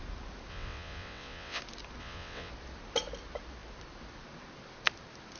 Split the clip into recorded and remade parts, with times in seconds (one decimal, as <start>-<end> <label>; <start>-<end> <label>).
0.0-0.5 recorded; 0.5-1.6 remade; 1.6-2.0 recorded; 2.0-2.5 remade; 2.5-5.4 recorded